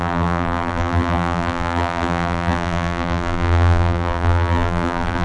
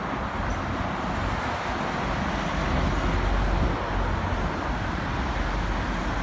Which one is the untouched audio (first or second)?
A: second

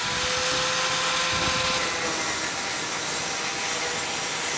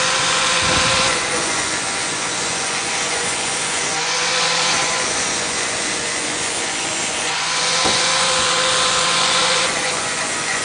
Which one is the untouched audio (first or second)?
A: first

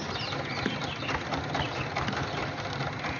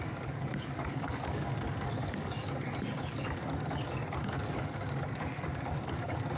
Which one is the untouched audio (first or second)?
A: first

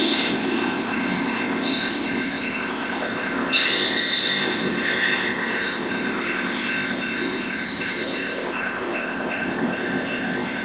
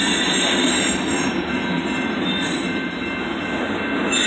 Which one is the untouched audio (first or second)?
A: second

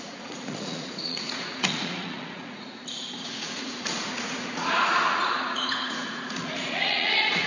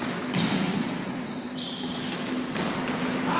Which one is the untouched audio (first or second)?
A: second